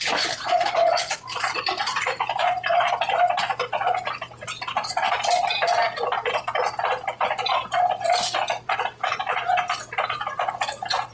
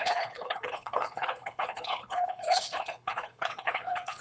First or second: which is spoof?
second